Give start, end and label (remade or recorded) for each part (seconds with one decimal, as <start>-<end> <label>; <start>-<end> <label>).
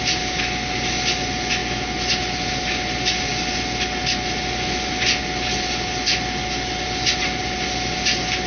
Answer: 0.0-8.5 recorded